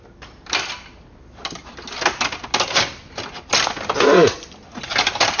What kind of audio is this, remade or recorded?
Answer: recorded